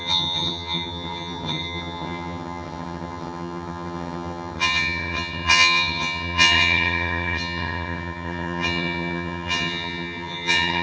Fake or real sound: fake